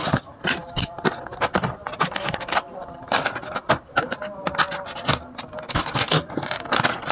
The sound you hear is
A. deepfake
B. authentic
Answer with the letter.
B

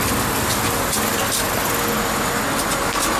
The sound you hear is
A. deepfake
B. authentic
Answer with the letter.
B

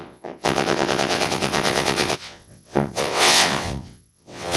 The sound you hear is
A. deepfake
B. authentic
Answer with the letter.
A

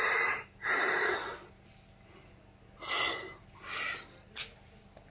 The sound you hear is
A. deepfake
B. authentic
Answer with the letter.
B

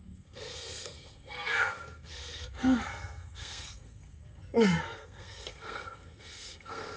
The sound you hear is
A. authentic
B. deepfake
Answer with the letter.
B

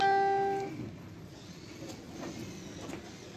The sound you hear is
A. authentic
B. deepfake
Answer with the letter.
A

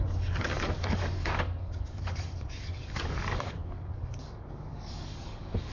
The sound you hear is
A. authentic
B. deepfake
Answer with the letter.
B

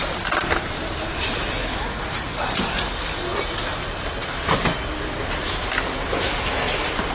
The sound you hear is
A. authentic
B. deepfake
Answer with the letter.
A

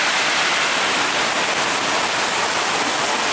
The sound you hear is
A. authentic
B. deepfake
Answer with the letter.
A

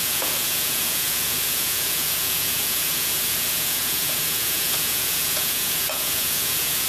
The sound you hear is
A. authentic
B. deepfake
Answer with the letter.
B